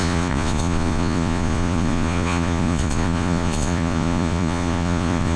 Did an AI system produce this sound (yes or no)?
yes